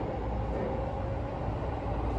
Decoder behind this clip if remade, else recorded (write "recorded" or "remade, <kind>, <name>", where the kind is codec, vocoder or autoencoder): recorded